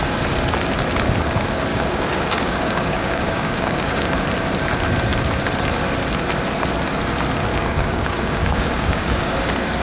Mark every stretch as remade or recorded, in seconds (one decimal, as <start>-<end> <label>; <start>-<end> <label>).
0.0-1.7 recorded; 1.7-4.1 remade; 4.1-7.5 recorded; 7.5-9.4 remade; 9.4-9.8 recorded